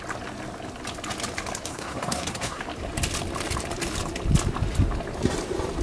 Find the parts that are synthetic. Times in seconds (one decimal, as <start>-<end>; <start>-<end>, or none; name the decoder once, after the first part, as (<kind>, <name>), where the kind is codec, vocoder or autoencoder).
1.7-2.6 (codec, SNAC)